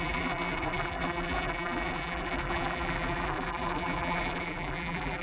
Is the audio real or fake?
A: fake